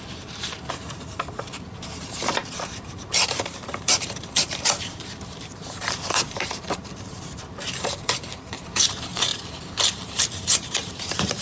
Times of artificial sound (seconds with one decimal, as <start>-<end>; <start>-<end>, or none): 0.0-9.3; 10.0-11.4